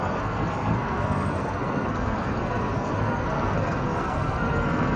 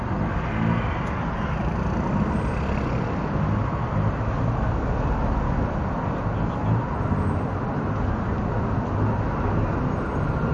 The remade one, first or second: first